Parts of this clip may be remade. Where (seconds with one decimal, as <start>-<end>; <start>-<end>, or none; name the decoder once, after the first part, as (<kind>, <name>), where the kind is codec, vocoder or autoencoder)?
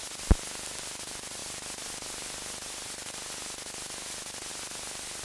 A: none